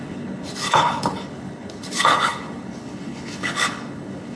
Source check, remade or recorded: remade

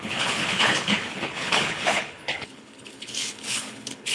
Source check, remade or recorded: remade